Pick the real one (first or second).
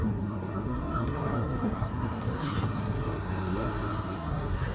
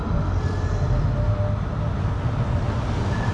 second